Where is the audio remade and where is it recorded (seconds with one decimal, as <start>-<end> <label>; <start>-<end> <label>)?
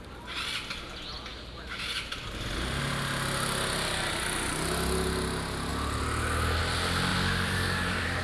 0.0-7.1 recorded; 7.1-8.2 remade